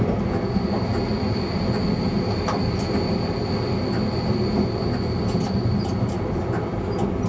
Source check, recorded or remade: recorded